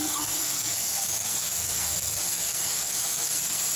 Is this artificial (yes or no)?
yes